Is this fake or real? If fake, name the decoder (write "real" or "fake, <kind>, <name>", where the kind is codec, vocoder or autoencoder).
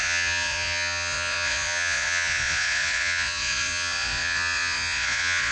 fake, vocoder, Vocos